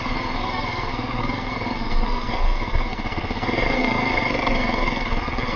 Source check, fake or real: fake